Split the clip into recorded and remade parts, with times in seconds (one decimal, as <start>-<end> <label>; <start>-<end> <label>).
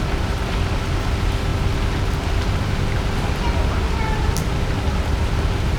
0.0-5.8 recorded